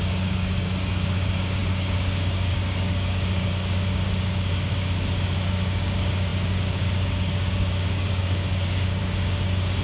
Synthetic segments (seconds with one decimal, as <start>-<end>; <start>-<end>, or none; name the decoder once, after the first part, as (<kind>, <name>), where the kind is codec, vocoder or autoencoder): 0.0-9.8 (codec, DAC)